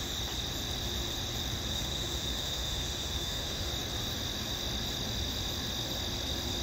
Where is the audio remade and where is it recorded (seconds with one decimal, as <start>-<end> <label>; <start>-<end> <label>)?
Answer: 0.0-1.7 recorded; 1.7-3.7 remade; 3.7-6.6 recorded

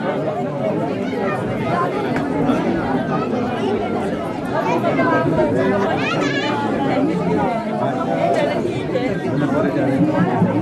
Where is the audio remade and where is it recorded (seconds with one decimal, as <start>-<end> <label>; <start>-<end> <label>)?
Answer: 0.0-10.6 recorded

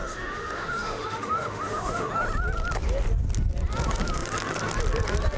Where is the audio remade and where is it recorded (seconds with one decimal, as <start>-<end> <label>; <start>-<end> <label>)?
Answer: 0.0-2.1 remade; 2.1-5.4 recorded

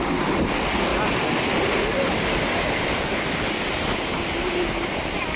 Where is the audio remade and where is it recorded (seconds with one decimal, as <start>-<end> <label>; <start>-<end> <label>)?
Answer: 0.0-5.4 recorded

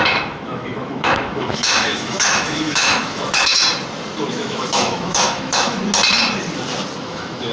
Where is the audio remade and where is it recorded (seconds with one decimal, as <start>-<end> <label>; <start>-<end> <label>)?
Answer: 0.0-3.6 remade; 3.6-4.3 recorded; 4.3-5.8 remade; 5.8-7.0 recorded; 7.0-7.5 remade

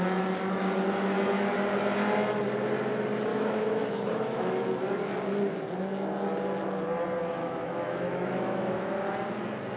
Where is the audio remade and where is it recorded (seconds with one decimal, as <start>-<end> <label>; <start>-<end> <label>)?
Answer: 0.0-3.3 recorded; 3.3-4.5 remade; 4.5-7.4 recorded; 7.4-9.0 remade; 9.0-9.8 recorded

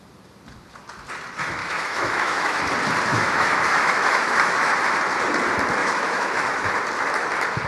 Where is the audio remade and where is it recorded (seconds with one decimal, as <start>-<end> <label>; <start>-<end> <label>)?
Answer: 0.0-1.6 recorded; 1.6-2.6 remade; 2.6-3.1 recorded; 3.1-4.7 remade; 4.7-5.8 recorded; 5.8-6.7 remade; 6.7-7.7 recorded

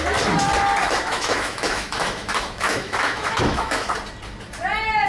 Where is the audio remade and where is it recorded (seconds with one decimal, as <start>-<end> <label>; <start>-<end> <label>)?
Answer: 0.0-0.8 recorded; 0.8-3.9 remade; 3.9-5.1 recorded